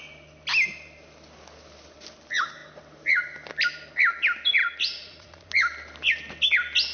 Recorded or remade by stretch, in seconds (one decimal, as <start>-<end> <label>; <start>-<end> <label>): 0.0-4.6 recorded; 4.6-5.5 remade; 5.5-6.9 recorded